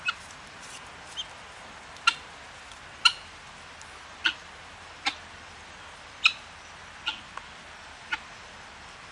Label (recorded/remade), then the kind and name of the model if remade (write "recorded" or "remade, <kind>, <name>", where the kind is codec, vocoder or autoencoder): recorded